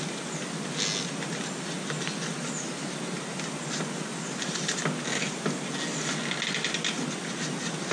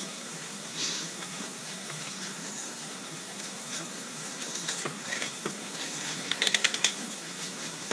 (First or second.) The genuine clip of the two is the first